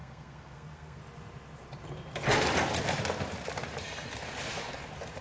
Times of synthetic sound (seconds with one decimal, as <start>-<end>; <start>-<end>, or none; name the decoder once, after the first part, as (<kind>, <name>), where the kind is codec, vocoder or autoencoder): 0.0-1.0 (codec, SNAC)